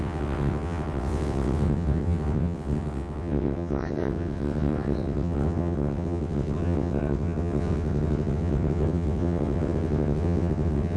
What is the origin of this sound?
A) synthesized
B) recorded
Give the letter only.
A